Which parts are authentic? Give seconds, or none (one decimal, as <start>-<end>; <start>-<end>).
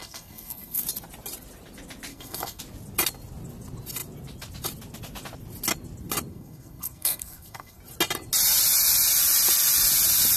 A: 0.8-2.1; 2.6-6.3; 7.8-10.4